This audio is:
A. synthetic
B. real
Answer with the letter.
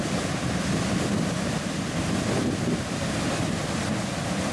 B